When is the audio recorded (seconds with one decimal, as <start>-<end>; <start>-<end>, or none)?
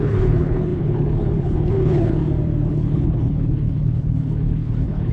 2.2-2.7